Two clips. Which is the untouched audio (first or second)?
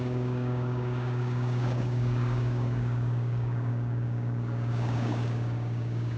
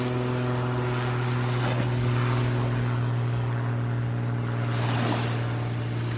second